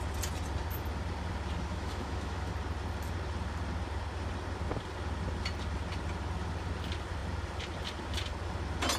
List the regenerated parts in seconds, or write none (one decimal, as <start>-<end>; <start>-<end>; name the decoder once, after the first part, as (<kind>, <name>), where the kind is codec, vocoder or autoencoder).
1.7-2.5 (autoencoder, DAC-VAE)